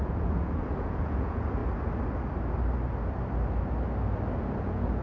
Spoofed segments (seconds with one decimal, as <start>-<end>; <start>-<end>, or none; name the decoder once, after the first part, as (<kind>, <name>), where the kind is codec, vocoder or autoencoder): 0.0-1.6 (vocoder, Vocos); 4.6-5.0